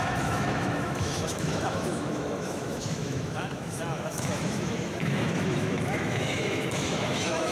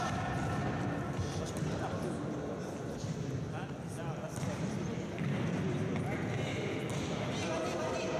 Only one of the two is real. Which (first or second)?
second